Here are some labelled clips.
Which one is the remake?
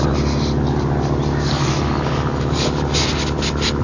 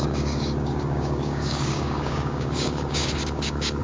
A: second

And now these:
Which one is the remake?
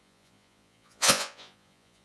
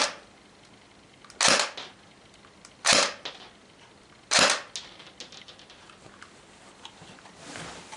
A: first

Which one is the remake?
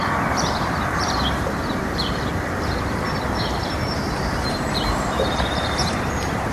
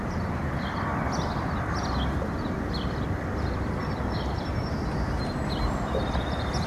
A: first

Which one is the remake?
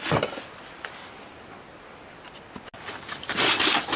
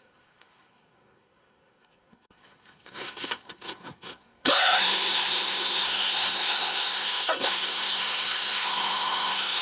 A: second